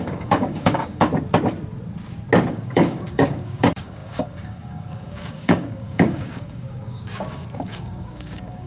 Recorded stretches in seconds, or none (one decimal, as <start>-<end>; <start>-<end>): 1.1-2.5